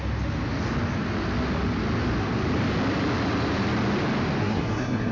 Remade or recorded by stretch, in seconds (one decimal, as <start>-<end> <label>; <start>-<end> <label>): 0.0-4.4 recorded; 4.4-5.1 remade